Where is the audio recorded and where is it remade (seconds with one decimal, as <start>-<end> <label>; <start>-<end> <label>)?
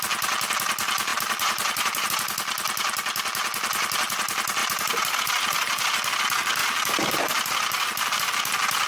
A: 0.0-1.1 recorded; 1.1-2.1 remade; 2.1-4.6 recorded; 4.6-5.2 remade; 5.2-6.6 recorded; 6.6-8.2 remade; 8.2-8.9 recorded